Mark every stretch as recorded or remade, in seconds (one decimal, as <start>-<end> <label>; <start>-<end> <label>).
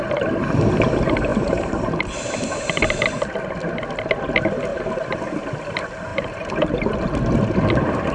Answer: 0.0-1.3 recorded; 1.3-2.8 remade; 2.8-4.7 recorded; 4.7-5.2 remade; 5.2-6.1 recorded; 6.1-6.8 remade; 6.8-8.1 recorded